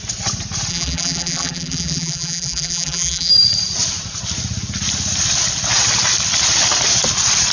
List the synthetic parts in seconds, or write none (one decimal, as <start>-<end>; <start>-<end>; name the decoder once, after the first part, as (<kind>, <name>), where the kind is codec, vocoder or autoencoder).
0.7-3.3 (vocoder, BigVGAN v2)